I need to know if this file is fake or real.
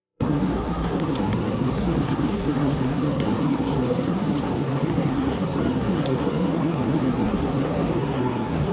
fake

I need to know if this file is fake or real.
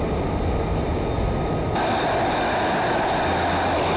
real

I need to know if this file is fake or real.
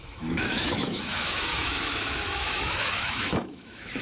fake